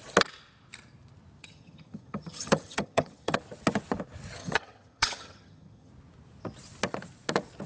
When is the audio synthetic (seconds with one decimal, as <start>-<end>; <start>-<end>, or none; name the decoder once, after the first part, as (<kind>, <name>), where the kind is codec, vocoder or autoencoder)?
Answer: 1.4-3.4 (vocoder, HiFi-GAN); 4.4-5.9

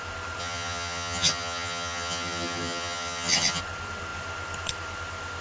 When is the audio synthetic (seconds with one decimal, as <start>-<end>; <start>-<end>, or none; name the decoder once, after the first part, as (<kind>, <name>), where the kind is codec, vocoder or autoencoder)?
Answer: 0.4-3.6 (vocoder, HiFi-GAN)

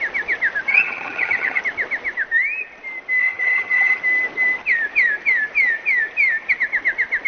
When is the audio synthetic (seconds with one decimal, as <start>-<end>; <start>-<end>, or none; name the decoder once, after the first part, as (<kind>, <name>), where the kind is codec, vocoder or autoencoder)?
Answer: 0.7-1.6 (vocoder, HiFi-GAN); 3.2-4.0

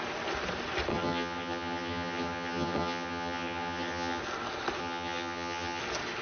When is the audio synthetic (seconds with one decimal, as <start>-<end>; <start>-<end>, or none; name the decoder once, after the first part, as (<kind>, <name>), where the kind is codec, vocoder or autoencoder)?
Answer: 0.9-4.2 (vocoder, HiFi-GAN); 4.8-5.8

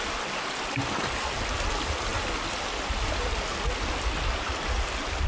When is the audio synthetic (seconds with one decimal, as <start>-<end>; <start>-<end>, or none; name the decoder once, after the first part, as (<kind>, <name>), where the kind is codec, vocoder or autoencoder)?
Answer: none

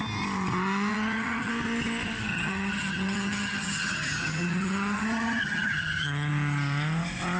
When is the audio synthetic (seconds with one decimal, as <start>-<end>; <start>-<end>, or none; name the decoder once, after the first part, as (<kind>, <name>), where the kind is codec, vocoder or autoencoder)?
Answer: 0.9-1.5 (vocoder, HiFi-GAN); 2.3-6.3

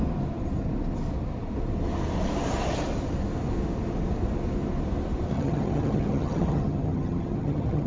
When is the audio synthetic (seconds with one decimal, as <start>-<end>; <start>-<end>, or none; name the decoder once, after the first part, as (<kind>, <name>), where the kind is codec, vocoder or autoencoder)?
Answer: 5.3-7.9 (vocoder, HiFi-GAN)

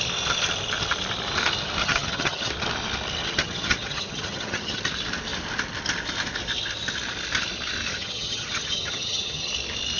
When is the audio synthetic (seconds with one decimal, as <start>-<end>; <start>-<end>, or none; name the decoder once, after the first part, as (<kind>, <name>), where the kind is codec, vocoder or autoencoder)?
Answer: 1.8-2.5 (vocoder, HiFi-GAN); 3.4-4.8; 7.9-9.5